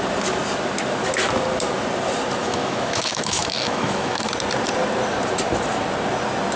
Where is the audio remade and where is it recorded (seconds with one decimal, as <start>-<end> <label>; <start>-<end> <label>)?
0.0-2.4 recorded; 2.4-4.3 remade; 4.3-6.6 recorded

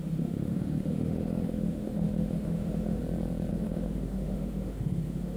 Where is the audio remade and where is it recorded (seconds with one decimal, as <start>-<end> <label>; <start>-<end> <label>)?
0.0-3.0 remade; 3.0-3.5 recorded; 3.5-5.4 remade

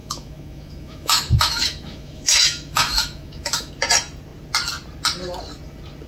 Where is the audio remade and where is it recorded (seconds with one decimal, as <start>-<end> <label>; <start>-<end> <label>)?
0.0-3.7 remade; 3.7-6.1 recorded

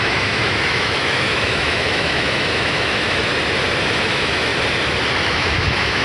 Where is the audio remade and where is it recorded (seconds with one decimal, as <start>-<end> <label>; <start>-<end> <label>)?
0.0-3.3 remade; 3.3-4.0 recorded; 4.0-4.5 remade; 4.5-5.2 recorded; 5.2-6.0 remade

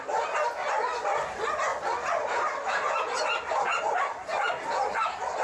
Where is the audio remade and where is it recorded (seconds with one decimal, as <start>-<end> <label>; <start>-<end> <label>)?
0.0-5.4 recorded

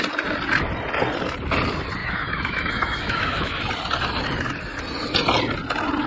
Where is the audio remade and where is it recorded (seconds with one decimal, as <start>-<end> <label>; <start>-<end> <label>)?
0.0-2.0 recorded; 2.0-3.6 remade; 3.6-6.1 recorded

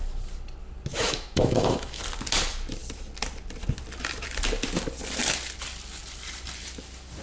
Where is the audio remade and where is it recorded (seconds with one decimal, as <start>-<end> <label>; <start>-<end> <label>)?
0.0-0.9 recorded; 0.9-2.0 remade; 2.0-7.2 recorded